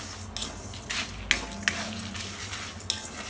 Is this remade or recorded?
recorded